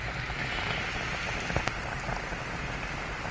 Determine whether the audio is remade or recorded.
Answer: recorded